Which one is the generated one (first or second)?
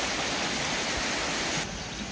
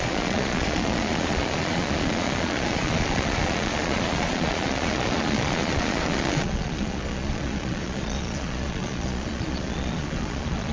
second